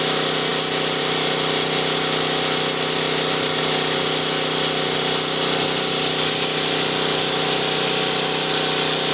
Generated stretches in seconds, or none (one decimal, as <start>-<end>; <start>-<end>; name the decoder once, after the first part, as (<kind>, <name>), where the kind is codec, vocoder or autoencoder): none